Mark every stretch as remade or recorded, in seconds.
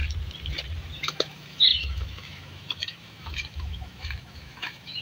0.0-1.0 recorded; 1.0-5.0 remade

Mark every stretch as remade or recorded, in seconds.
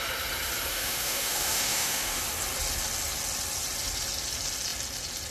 0.0-0.7 recorded; 0.7-2.2 remade; 2.2-5.3 recorded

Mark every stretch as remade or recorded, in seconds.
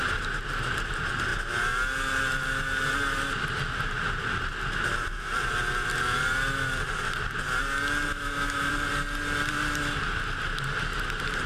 0.0-8.1 recorded; 8.1-8.7 remade; 8.7-11.5 recorded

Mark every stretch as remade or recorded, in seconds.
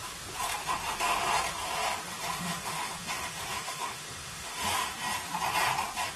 0.0-0.6 recorded; 0.6-1.2 remade; 1.2-2.1 recorded; 2.1-4.9 remade; 4.9-6.2 recorded